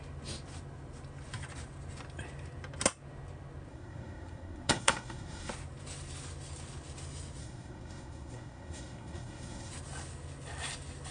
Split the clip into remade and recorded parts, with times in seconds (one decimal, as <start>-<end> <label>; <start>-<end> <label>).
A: 0.0-3.7 recorded; 3.7-5.5 remade; 5.5-7.4 recorded; 7.4-9.7 remade; 9.7-11.1 recorded